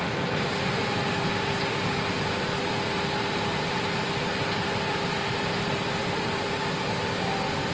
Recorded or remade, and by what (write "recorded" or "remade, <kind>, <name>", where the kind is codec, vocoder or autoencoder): recorded